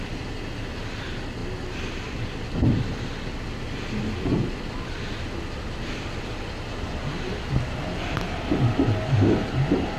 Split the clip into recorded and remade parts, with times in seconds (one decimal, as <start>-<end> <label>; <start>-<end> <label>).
0.0-10.0 recorded